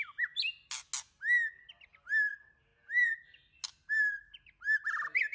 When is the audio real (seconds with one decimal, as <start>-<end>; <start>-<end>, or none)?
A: 0.0-5.3